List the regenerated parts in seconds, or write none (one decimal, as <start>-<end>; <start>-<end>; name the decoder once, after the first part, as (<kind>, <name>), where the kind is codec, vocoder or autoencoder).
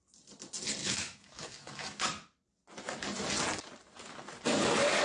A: 0.8-2.0 (autoencoder, DAC-VAE)